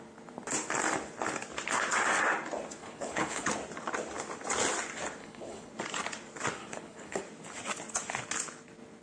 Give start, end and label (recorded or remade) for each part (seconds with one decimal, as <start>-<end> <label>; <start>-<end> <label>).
0.0-2.8 recorded; 2.8-3.5 remade; 3.5-5.2 recorded; 5.2-5.7 remade; 5.7-6.6 recorded; 6.6-7.2 remade; 7.2-9.0 recorded